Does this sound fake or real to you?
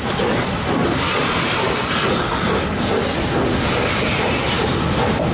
real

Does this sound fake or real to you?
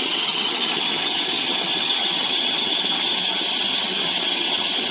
fake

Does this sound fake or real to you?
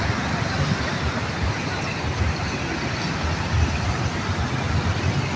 real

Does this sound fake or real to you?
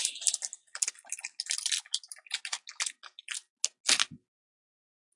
real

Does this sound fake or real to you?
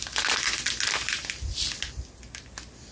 real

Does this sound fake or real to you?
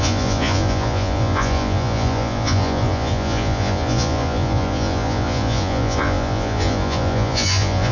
fake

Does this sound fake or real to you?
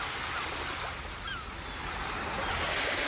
real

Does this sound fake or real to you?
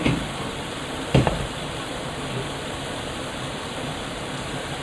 fake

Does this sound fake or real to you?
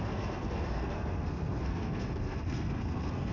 fake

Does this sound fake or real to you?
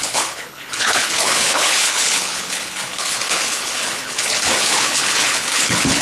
fake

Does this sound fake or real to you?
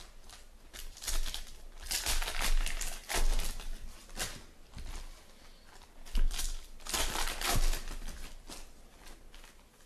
real